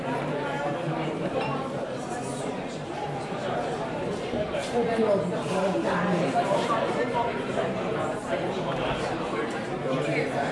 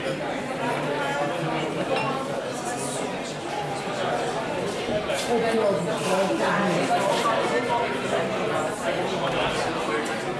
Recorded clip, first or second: second